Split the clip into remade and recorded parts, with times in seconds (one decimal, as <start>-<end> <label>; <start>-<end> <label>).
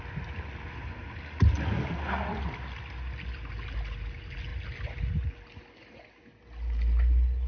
0.0-7.5 recorded